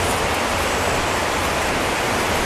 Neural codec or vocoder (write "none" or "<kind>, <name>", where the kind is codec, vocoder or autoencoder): none